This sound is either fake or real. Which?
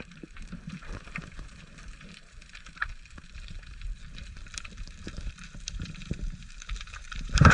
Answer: fake